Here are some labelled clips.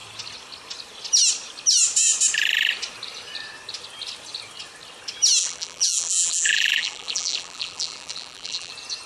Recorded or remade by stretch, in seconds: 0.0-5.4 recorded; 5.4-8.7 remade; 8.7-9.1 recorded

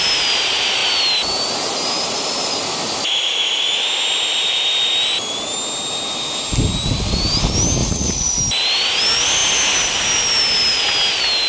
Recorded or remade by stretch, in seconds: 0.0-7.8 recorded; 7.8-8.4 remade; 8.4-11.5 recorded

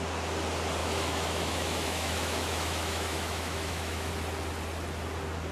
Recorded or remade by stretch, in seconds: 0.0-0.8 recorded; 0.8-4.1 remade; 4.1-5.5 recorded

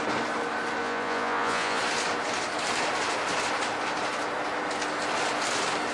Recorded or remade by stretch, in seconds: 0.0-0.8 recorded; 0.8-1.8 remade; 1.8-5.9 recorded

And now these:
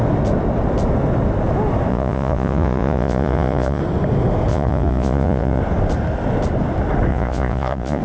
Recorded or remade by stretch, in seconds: 0.0-1.9 recorded; 1.9-3.8 remade; 3.8-4.5 recorded; 4.5-5.6 remade; 5.6-7.1 recorded; 7.1-8.0 remade